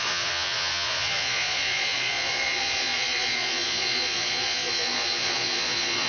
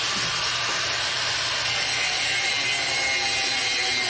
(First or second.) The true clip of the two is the second